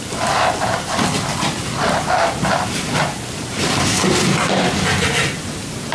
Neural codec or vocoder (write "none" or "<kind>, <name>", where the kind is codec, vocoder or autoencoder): none